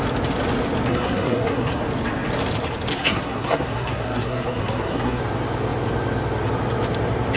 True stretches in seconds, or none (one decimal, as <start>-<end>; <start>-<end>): 0.0-0.9; 1.8-2.9; 5.2-7.4

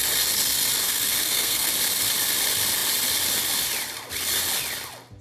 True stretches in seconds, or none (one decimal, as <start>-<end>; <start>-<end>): 0.0-0.8; 1.7-5.2

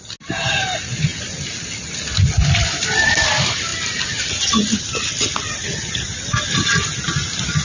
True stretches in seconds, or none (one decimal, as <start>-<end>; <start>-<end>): 0.0-7.6

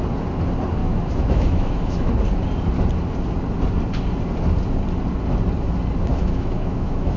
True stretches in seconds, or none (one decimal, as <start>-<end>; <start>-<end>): 0.0-0.8; 2.1-6.1

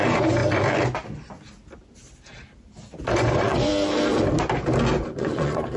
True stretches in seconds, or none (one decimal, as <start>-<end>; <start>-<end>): 0.4-3.1; 3.7-5.0

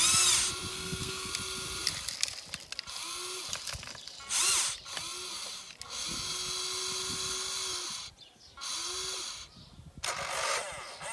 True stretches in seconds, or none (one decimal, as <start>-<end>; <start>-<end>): 0.0-0.7; 1.3-11.1

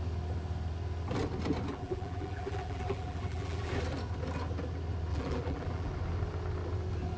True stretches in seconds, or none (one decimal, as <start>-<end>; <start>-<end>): 0.0-1.7; 3.7-5.1; 5.9-7.2